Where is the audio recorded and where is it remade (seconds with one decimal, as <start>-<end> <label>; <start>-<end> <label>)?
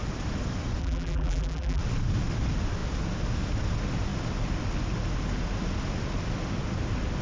0.0-0.8 recorded; 0.8-1.8 remade; 1.8-7.2 recorded